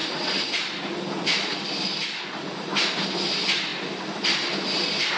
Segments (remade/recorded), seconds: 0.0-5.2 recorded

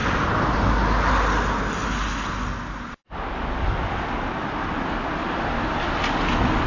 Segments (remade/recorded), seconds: 0.0-6.7 recorded

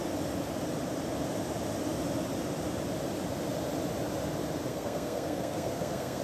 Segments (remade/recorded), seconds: 0.0-4.7 recorded; 4.7-6.2 remade

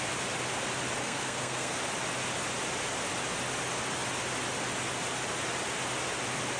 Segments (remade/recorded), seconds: 0.0-1.0 recorded; 1.0-1.8 remade; 1.8-6.6 recorded

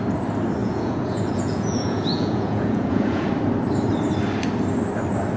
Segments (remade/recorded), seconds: 0.0-0.6 recorded; 0.6-3.3 remade; 3.3-5.4 recorded